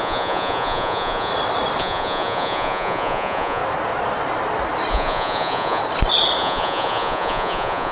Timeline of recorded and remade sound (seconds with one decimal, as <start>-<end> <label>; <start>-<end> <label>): 0.0-1.3 remade; 1.3-1.8 recorded; 1.8-3.6 remade; 3.6-4.9 recorded; 4.9-5.8 remade; 5.8-6.4 recorded; 6.4-7.9 remade